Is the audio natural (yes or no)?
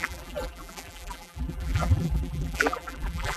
no